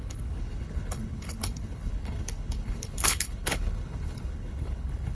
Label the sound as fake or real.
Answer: fake